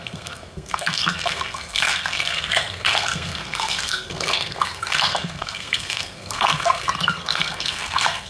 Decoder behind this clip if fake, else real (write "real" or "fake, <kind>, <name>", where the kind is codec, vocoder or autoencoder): fake, codec, SNAC